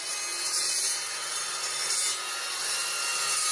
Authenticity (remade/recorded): recorded